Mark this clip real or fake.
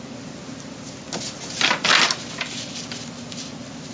real